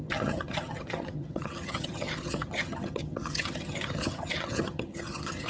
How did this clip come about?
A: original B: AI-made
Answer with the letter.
B